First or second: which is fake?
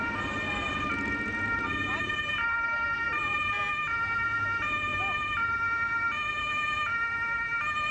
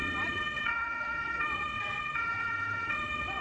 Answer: second